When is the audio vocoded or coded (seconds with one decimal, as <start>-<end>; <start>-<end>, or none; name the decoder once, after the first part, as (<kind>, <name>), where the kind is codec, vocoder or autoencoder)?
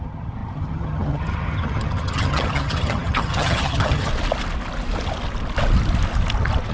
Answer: 0.0-4.1 (vocoder, HiFi-GAN)